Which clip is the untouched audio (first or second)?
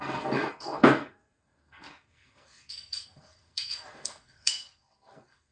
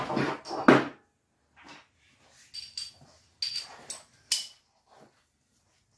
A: second